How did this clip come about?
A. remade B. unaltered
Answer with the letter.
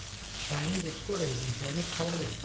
A